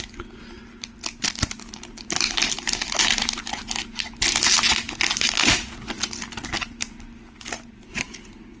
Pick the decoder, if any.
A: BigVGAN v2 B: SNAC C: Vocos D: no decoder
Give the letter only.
D